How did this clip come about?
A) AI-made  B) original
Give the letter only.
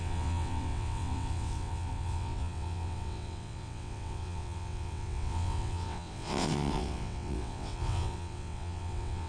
A